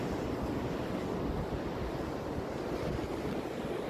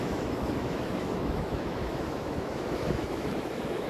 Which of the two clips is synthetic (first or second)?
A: second